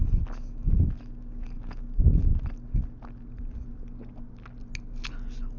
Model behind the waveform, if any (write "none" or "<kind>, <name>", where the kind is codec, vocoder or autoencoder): none